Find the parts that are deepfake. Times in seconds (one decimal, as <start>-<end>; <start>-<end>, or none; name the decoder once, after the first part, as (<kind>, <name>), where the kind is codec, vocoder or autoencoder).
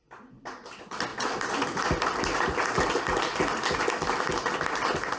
none